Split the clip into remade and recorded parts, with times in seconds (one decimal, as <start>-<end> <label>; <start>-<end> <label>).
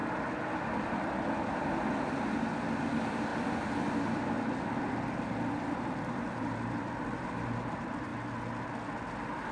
0.0-0.9 recorded; 0.9-3.3 remade; 3.3-5.5 recorded; 5.5-8.1 remade; 8.1-9.1 recorded; 9.1-9.5 remade